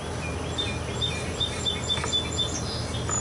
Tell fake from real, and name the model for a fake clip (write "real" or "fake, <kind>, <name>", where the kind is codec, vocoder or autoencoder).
real